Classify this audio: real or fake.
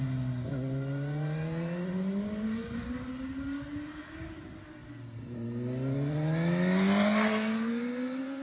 real